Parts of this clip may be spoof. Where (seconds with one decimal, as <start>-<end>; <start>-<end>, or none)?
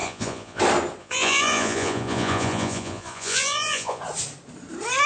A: 0.0-0.6; 1.0-4.0